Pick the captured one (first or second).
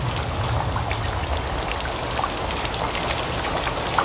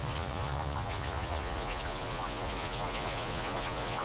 first